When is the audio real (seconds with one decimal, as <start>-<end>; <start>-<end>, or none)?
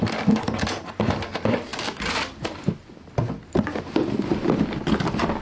0.0-5.4